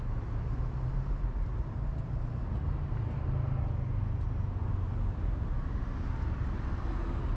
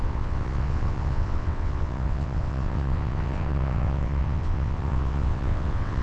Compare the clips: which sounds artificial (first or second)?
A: second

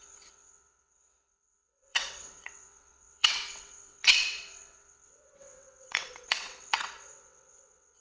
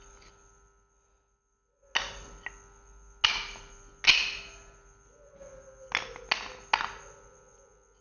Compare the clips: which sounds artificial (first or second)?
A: first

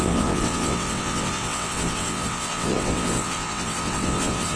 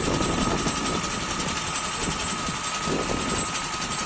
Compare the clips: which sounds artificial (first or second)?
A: first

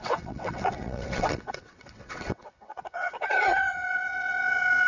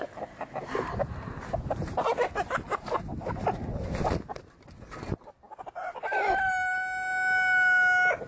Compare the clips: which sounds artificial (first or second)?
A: first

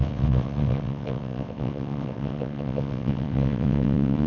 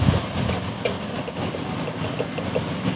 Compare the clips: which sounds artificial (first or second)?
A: first